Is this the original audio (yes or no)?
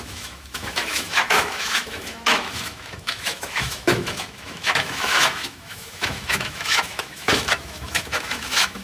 no